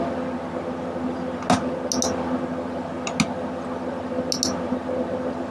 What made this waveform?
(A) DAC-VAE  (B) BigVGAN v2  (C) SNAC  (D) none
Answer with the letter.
D